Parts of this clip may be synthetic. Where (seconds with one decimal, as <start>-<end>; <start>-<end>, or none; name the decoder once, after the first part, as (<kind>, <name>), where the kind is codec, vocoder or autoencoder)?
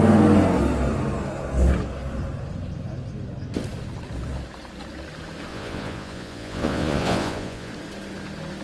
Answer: 5.5-7.7 (vocoder, Vocos)